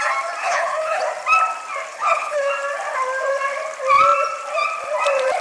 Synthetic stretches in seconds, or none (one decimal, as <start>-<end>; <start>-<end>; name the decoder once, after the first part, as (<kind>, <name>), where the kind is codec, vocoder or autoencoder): 0.4-1.0 (codec, HILCodec); 1.9-2.5